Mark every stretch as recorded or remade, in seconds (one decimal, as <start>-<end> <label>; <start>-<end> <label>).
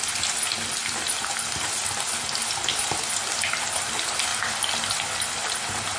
0.0-6.0 recorded